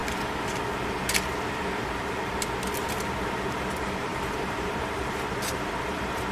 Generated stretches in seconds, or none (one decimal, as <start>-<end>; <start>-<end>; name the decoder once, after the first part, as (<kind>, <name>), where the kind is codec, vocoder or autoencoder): 3.5-6.3 (vocoder, BigVGAN v2)